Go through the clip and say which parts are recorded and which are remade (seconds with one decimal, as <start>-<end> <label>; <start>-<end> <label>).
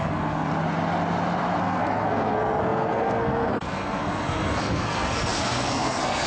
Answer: 0.0-0.5 remade; 0.5-1.6 recorded; 1.6-6.3 remade